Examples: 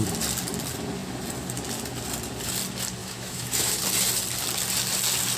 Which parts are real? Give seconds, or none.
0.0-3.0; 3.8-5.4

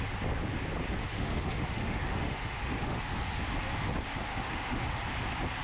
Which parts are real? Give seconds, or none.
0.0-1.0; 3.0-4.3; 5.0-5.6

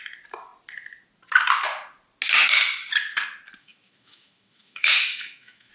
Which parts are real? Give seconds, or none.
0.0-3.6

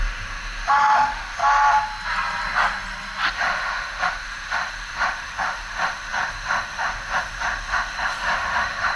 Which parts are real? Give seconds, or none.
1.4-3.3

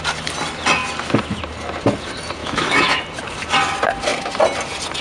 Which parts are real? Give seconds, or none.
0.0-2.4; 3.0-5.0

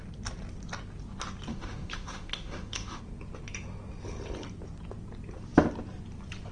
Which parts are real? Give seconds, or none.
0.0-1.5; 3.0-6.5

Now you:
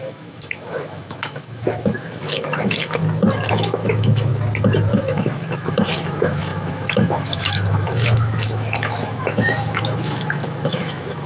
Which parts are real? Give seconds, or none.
3.0-3.5; 4.3-4.9

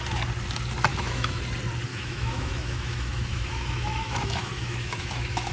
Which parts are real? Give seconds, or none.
0.0-0.9; 1.4-1.9